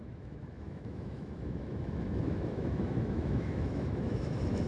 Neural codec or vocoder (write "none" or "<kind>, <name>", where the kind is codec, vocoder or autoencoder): autoencoder, DAC-VAE